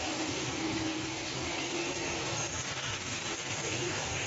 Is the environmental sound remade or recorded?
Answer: remade